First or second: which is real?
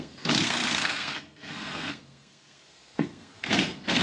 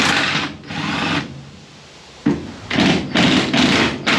second